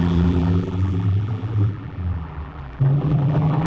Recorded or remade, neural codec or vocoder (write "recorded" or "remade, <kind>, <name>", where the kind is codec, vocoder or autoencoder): remade, vocoder, BigVGAN v2